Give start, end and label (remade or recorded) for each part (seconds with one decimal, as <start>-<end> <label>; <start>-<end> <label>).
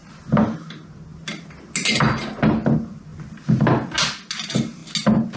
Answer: 0.0-5.4 recorded